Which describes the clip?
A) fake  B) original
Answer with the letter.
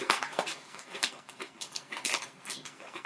A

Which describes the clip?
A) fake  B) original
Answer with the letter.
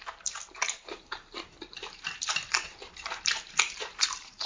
A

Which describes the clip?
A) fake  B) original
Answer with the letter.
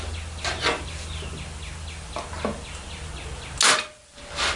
B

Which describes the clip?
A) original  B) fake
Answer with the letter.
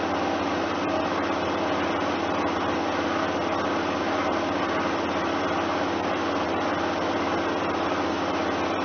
A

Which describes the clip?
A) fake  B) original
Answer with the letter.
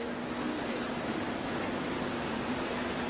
B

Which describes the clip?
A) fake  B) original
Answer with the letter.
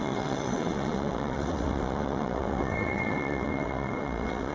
A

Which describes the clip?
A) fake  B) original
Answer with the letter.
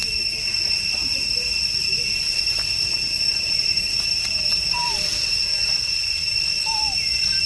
B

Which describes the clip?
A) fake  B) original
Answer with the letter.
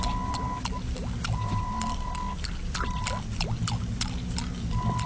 B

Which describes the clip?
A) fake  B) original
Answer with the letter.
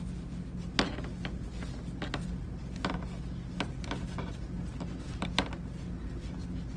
B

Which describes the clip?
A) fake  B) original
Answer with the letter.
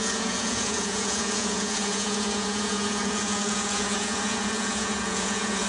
A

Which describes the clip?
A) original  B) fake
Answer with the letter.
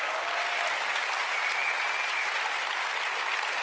A